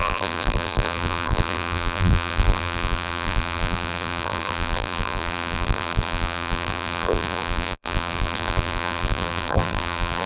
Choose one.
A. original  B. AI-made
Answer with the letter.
B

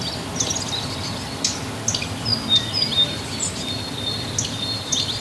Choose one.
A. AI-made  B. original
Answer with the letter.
B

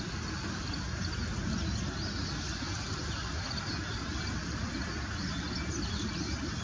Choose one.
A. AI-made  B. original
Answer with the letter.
B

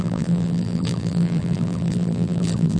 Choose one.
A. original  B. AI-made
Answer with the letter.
B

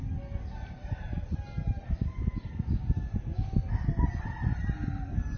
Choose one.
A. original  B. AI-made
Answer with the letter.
A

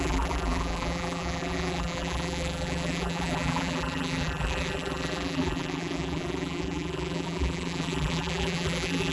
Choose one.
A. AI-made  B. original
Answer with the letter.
A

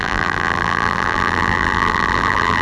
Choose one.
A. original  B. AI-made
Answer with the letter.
B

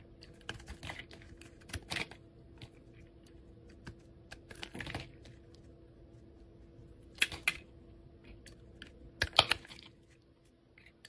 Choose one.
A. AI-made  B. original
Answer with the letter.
B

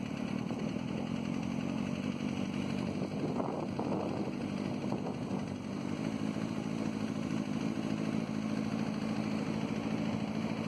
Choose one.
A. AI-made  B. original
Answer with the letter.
B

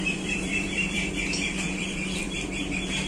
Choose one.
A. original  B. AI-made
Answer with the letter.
B